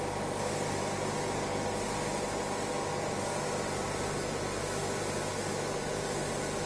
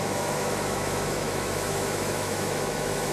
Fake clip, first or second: second